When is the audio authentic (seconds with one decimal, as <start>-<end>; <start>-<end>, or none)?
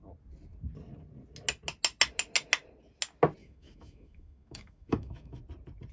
0.0-3.4; 5.4-5.9